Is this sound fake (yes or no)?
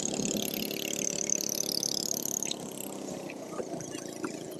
no